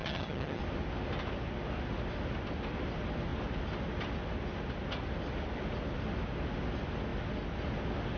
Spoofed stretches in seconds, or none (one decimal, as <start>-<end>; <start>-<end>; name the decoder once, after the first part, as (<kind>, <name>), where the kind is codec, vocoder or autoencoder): 0.0-0.6 (vocoder, HiFi-GAN)